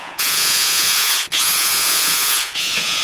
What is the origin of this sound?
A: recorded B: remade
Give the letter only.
B